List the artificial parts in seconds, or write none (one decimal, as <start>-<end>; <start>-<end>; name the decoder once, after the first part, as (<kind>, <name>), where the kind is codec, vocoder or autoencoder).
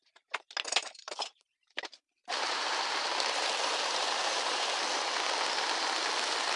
0.8-4.8 (vocoder, BigVGAN v2)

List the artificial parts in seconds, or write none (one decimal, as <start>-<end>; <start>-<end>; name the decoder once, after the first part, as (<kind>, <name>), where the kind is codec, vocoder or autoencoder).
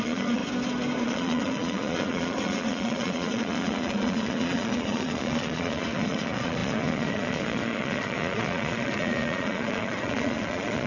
0.0-0.4 (vocoder, Vocos); 1.0-10.9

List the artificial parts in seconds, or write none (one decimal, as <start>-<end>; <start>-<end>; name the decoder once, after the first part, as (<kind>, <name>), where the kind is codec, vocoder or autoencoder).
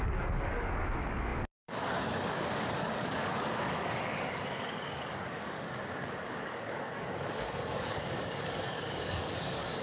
0.0-9.8 (codec, DAC)